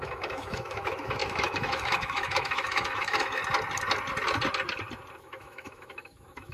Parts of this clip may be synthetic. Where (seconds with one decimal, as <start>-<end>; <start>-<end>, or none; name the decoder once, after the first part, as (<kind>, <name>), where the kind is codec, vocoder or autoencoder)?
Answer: 0.0-3.4 (autoencoder, DAC-VAE); 5.2-6.5